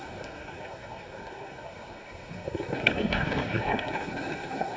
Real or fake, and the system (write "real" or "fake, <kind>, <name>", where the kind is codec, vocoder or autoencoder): fake, codec, SNAC